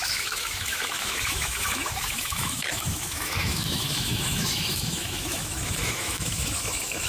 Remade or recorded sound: remade